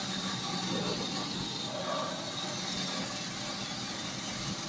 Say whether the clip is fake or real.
real